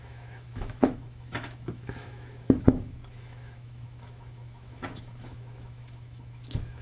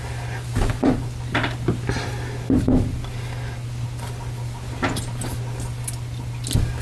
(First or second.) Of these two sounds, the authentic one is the second